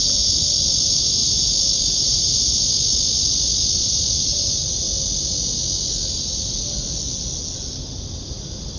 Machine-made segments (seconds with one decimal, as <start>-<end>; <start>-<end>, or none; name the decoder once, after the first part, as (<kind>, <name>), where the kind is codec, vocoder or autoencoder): none